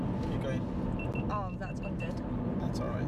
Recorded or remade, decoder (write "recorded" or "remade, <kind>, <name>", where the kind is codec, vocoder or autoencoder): recorded